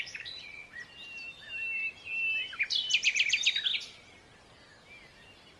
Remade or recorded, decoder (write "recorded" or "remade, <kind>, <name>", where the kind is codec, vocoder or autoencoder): recorded